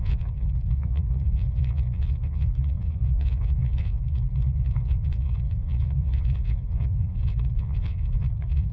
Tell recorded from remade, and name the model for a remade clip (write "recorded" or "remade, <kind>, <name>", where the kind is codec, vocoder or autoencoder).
remade, vocoder, Vocos